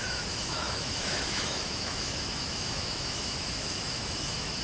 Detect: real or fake fake